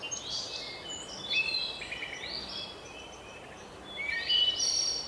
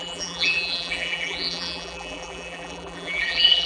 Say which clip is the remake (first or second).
second